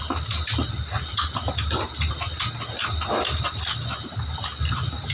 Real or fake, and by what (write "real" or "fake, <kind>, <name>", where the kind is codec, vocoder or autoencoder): real